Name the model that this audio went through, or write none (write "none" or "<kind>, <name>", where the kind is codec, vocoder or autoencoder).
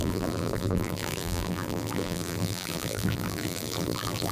vocoder, BigVGAN v2